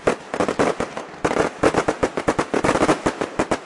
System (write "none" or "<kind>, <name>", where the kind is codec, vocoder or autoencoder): none